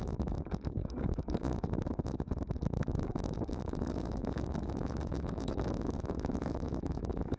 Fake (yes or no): yes